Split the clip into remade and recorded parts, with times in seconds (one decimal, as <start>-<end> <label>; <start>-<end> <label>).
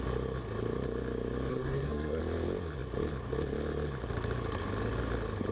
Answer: 0.0-1.5 recorded; 1.5-2.2 remade; 2.2-5.5 recorded